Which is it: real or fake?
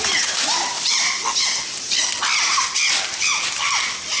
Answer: real